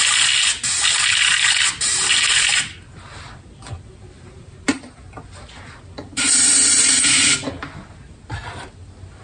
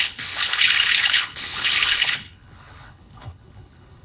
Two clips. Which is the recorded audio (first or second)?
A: first